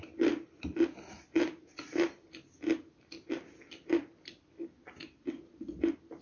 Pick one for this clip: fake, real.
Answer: real